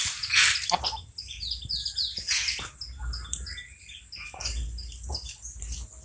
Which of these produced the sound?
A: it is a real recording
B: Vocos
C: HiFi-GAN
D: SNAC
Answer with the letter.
A